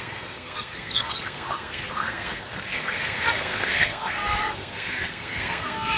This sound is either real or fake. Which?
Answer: fake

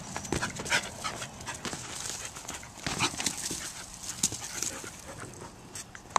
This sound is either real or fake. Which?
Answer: real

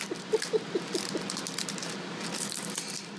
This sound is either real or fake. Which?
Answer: real